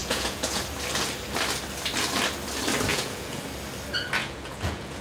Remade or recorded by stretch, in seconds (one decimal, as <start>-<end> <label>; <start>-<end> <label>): 0.0-0.6 remade; 0.6-2.9 recorded; 2.9-3.4 remade; 3.4-4.2 recorded; 4.2-5.0 remade